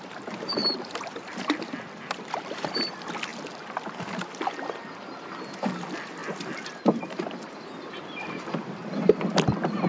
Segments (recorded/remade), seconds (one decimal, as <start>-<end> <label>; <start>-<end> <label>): 0.0-0.6 recorded; 0.6-2.8 remade; 2.8-9.9 recorded